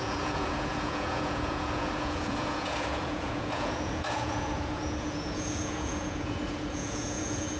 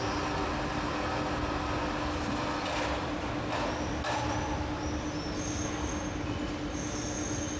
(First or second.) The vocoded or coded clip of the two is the first